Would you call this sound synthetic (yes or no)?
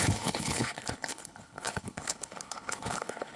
yes